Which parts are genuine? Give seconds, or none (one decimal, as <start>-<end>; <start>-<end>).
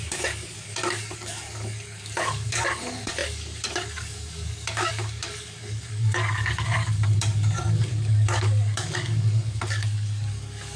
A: none